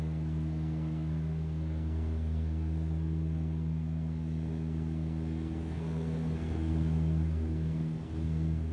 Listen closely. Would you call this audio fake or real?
fake